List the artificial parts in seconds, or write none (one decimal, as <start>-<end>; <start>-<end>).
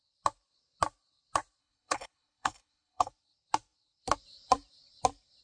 1.6-3.1